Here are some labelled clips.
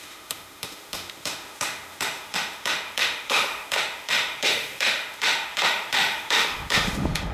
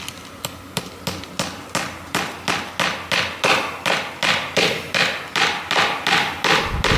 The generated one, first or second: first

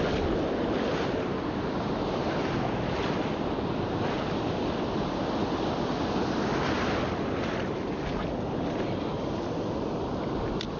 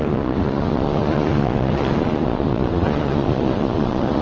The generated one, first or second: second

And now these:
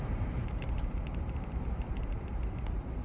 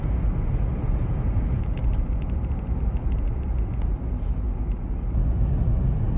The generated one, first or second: first